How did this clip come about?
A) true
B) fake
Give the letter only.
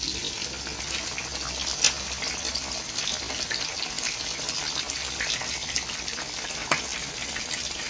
A